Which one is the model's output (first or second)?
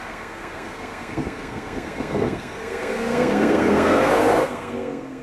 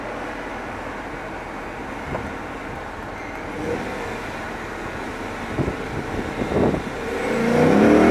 first